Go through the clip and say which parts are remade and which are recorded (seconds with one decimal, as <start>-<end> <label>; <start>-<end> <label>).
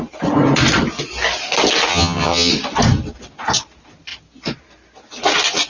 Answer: 0.0-1.9 recorded; 1.9-2.5 remade; 2.5-5.7 recorded